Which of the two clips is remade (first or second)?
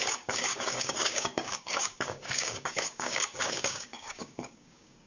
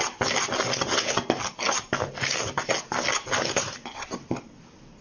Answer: first